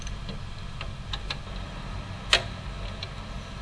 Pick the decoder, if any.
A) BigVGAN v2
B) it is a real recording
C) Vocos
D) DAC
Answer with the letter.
B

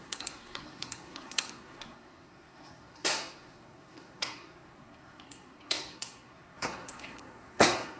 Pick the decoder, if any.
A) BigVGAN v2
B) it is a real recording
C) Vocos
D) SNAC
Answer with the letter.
D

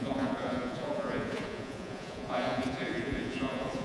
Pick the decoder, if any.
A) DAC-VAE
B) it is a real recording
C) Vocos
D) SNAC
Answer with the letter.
C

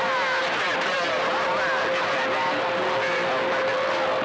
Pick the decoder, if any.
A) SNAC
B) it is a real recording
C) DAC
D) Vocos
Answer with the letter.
B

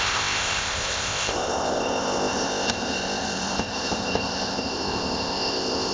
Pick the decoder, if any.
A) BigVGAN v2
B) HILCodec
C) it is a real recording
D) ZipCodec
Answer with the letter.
D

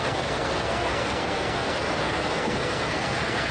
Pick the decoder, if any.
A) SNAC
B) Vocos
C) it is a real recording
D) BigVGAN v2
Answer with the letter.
A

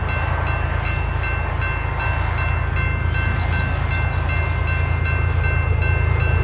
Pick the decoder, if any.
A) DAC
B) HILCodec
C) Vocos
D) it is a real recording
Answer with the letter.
D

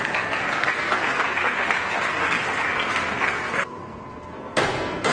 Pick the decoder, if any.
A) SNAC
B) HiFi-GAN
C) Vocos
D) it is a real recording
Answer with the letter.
A